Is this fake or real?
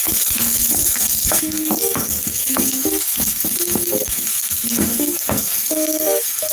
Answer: fake